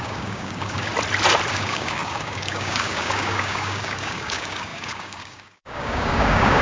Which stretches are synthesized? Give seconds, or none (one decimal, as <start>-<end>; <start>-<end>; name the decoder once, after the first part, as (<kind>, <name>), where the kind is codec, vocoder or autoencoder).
0.0-0.9 (codec, DAC); 1.5-6.6